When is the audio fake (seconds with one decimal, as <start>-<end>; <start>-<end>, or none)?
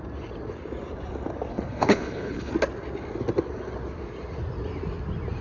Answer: 1.5-2.5